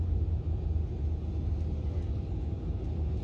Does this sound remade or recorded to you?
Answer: recorded